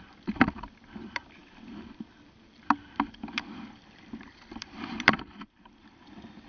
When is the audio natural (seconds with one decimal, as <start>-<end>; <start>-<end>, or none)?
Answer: none